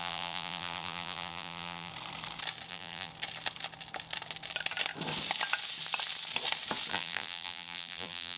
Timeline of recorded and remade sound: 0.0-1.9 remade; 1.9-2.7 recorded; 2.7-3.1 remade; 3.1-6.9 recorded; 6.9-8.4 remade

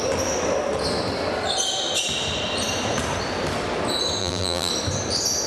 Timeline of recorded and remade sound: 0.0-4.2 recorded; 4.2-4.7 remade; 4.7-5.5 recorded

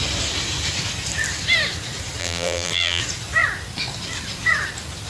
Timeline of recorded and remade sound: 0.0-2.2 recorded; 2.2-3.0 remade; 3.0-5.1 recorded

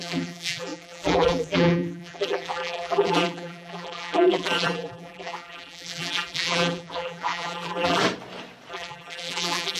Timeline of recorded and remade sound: 0.0-8.0 remade; 8.0-8.7 recorded; 8.7-9.8 remade

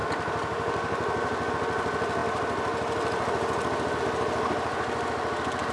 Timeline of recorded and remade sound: 0.0-5.7 recorded

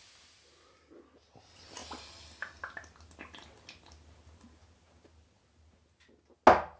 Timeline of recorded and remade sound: 0.0-6.8 recorded